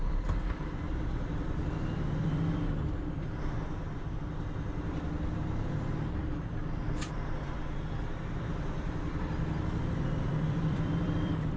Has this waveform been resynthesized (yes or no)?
yes